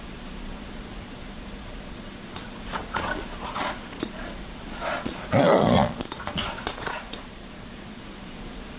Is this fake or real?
fake